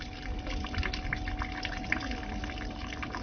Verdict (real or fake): real